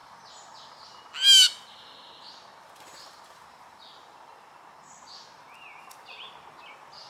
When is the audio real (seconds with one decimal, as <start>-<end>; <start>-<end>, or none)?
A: 0.0-7.1